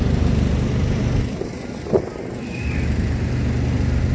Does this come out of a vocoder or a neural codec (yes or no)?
no